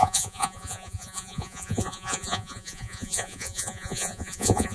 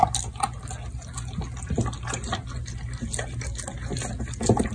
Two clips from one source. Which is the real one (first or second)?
second